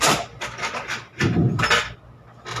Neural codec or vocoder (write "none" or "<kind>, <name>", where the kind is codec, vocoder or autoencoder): none